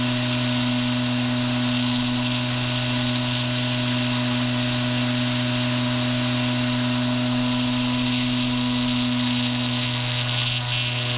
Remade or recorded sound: recorded